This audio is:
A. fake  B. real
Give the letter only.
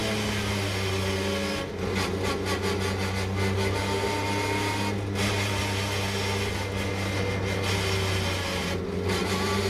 B